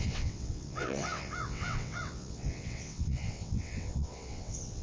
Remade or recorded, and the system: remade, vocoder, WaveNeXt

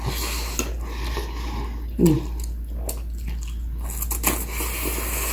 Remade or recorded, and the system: recorded